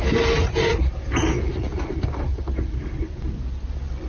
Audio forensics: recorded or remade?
recorded